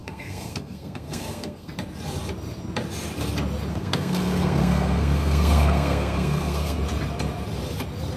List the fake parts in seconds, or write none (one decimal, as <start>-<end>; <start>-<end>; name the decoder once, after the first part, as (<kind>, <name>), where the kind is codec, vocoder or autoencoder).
0.0-1.7 (codec, SNAC); 3.7-6.8